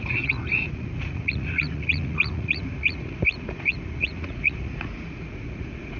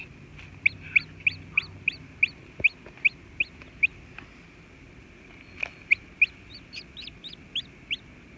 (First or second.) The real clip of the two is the second